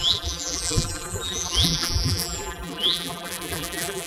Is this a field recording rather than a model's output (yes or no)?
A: no